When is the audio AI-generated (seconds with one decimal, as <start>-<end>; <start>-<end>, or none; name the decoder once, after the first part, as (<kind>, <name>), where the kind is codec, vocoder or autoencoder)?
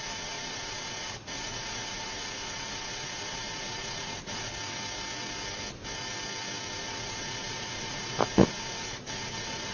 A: 0.0-4.5 (vocoder, Vocos); 6.8-9.7